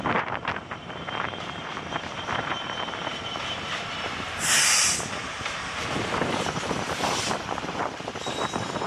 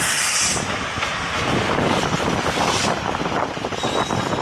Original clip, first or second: second